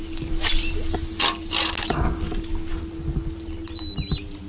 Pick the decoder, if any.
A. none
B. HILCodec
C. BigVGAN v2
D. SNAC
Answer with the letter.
A